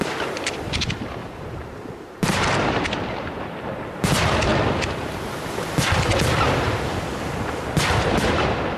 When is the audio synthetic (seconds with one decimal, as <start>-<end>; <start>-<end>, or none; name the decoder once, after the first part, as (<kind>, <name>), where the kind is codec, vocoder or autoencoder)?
1.2-3.3 (vocoder, BigVGAN v2)